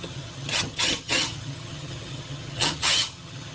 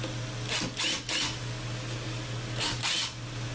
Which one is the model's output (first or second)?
first